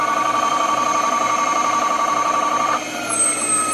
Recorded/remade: remade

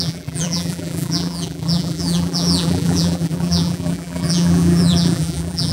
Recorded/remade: remade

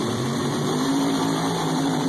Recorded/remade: remade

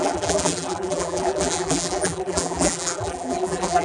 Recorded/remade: remade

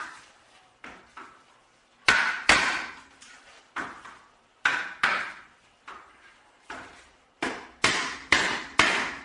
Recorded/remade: remade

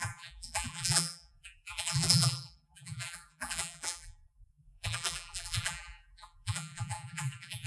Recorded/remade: remade